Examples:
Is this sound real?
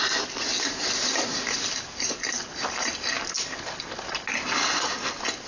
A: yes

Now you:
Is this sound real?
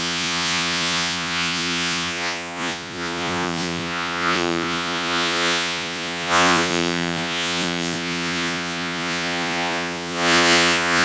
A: no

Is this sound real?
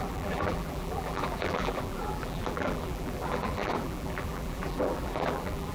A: no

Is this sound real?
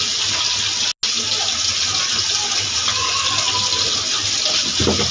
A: yes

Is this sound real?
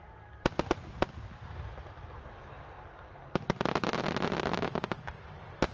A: yes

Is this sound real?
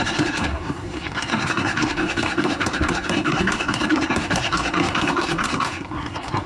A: no